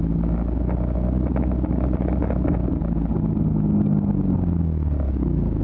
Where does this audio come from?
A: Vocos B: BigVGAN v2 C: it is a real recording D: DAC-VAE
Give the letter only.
C